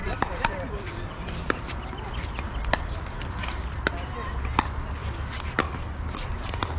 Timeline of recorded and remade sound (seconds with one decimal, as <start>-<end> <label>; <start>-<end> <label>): 0.0-3.9 remade; 3.9-6.8 recorded